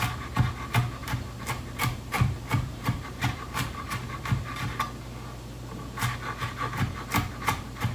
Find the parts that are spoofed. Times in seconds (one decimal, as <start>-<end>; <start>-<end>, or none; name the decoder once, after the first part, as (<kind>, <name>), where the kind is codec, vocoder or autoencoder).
1.0-4.4 (vocoder, BigVGAN v2)